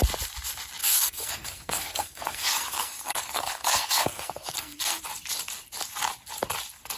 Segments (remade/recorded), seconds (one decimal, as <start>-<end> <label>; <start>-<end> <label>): 0.0-0.8 recorded; 0.8-5.0 remade; 5.0-7.0 recorded